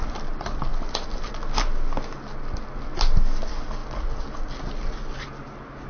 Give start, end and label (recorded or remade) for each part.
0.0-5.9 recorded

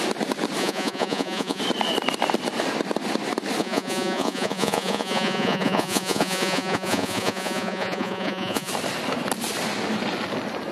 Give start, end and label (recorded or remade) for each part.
0.0-0.6 recorded; 0.6-1.6 remade; 1.6-3.6 recorded; 3.6-8.7 remade; 8.7-10.7 recorded

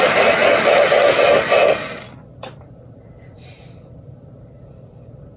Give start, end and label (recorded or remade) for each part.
0.0-0.4 remade; 0.4-2.6 recorded; 2.6-5.4 remade

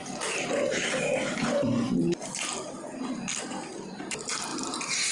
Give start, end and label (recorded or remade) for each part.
0.0-4.5 recorded; 4.5-5.1 remade

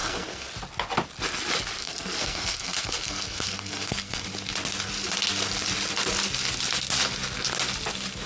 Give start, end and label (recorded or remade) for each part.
0.0-0.5 remade; 0.5-1.8 recorded; 1.8-4.2 remade; 4.2-8.3 recorded

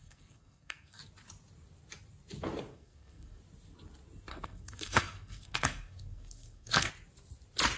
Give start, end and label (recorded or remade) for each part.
0.0-1.0 remade; 1.0-2.7 recorded; 2.7-3.4 remade; 3.4-4.3 recorded; 4.3-6.9 remade; 6.9-7.8 recorded

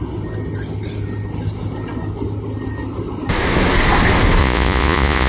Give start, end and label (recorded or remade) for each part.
0.0-4.4 recorded; 4.4-5.3 remade

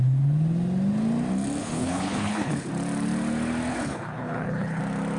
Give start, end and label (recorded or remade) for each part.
0.0-1.6 recorded; 1.6-2.7 remade; 2.7-3.7 recorded; 3.7-4.8 remade; 4.8-5.2 recorded